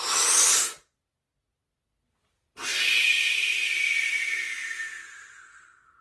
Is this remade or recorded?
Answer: recorded